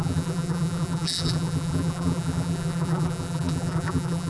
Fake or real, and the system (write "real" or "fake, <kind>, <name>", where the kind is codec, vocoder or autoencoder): fake, vocoder, BigVGAN v2